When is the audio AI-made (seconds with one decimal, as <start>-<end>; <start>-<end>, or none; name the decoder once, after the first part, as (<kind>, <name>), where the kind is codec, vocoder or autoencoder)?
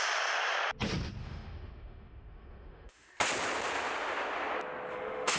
1.2-3.1 (autoencoder, DAC-VAE); 4.9-5.4